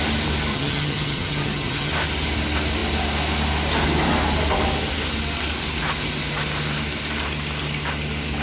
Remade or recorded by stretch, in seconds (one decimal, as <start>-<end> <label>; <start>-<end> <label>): 0.0-0.5 recorded; 0.5-1.9 remade; 1.9-8.4 recorded